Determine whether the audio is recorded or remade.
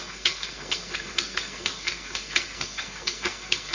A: remade